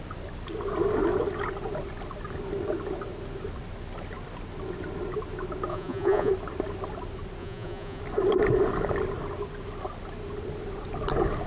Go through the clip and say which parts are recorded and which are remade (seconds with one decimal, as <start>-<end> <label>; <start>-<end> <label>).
0.0-5.7 recorded; 5.7-6.3 remade; 6.3-7.4 recorded; 7.4-8.0 remade; 8.0-11.5 recorded

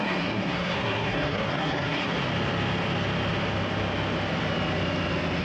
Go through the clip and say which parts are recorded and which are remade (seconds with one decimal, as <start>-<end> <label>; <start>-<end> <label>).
0.0-2.1 remade; 2.1-5.4 recorded

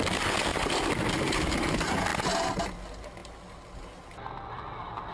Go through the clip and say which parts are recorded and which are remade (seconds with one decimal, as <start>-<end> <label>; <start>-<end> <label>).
0.0-5.1 recorded

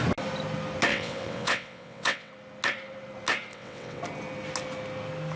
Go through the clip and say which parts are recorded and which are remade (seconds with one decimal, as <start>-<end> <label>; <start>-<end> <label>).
0.0-0.9 recorded; 0.9-2.3 remade; 2.3-3.5 recorded; 3.5-4.0 remade; 4.0-5.4 recorded

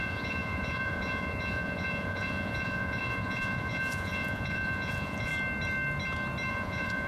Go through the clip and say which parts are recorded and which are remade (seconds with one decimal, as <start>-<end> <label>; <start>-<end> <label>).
0.0-5.3 remade; 5.3-6.5 recorded; 6.5-7.1 remade

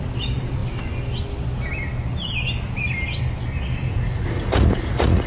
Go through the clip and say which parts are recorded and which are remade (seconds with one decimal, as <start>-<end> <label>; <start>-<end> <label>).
0.0-3.9 recorded; 3.9-5.3 remade

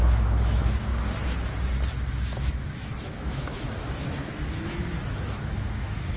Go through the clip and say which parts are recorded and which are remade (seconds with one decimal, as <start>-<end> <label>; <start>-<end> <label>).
0.0-0.9 remade; 0.9-2.1 recorded; 2.1-6.2 remade

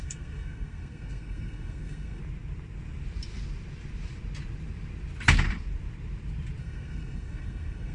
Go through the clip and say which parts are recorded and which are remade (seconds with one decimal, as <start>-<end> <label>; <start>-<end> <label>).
0.0-2.2 remade; 2.2-6.6 recorded; 6.6-7.9 remade